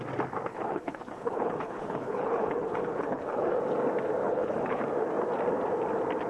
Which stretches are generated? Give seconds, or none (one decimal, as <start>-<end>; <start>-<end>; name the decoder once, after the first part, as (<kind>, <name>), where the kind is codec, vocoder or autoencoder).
0.5-3.6 (codec, HILCodec); 4.2-4.8